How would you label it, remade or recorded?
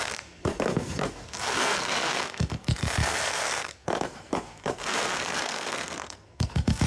remade